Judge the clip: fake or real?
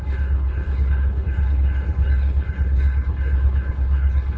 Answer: fake